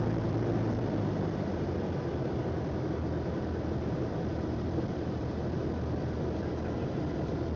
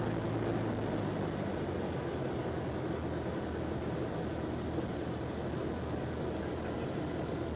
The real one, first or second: second